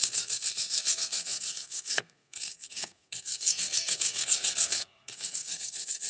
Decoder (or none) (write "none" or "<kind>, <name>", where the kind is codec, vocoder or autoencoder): codec, SNAC